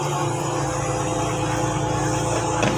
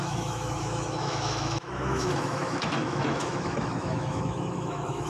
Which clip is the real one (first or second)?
first